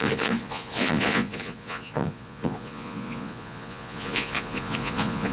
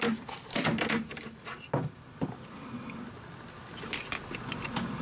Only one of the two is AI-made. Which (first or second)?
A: first